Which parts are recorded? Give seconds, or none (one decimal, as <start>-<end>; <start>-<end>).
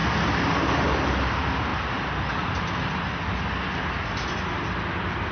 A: 0.0-5.3